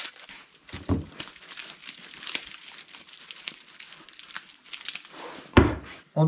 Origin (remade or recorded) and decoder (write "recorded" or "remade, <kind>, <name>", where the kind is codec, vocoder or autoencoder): remade, vocoder, BigVGAN v2